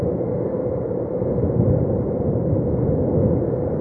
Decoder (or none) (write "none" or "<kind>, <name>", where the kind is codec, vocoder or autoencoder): none